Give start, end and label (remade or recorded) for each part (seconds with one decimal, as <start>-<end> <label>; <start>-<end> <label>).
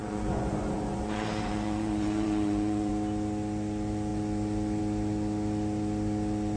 0.0-2.9 remade; 2.9-6.6 recorded